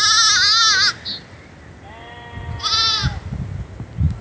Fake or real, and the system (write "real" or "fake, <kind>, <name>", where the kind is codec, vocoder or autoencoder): real